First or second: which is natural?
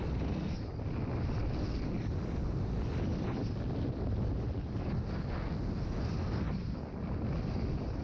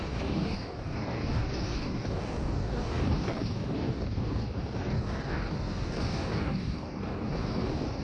first